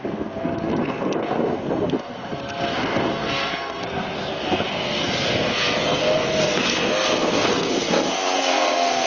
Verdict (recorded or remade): remade